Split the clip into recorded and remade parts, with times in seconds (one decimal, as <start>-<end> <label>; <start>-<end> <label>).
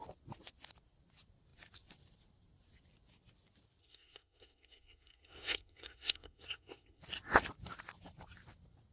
0.0-3.8 recorded; 3.8-7.0 remade; 7.0-8.9 recorded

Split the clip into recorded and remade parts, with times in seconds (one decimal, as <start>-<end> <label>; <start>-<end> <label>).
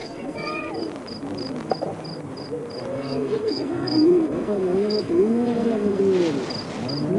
0.0-0.7 remade; 0.7-2.9 recorded; 2.9-6.0 remade; 6.0-7.2 recorded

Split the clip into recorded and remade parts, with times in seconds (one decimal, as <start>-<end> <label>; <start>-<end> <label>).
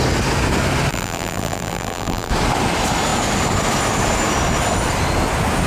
0.0-0.9 recorded; 0.9-2.3 remade; 2.3-5.7 recorded